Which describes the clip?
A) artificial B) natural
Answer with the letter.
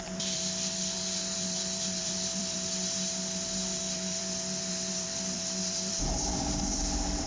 A